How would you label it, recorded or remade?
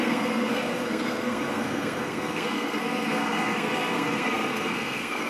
remade